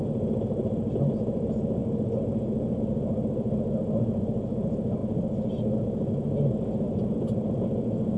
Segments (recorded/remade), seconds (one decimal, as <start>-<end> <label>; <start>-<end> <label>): 0.0-8.2 recorded